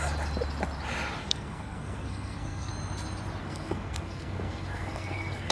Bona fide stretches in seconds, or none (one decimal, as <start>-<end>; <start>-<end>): 0.0-1.2; 2.7-3.4